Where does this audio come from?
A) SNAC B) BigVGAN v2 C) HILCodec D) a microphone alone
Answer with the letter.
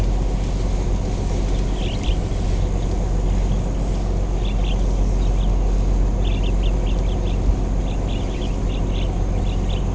D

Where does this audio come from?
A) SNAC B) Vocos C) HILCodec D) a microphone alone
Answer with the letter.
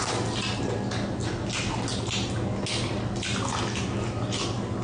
D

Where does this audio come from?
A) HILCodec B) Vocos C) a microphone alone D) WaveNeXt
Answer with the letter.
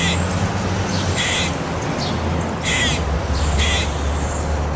C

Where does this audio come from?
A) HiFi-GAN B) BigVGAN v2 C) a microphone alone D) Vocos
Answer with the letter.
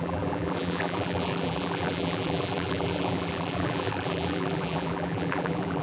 B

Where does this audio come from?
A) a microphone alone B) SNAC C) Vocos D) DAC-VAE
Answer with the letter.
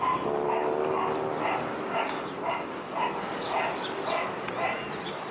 A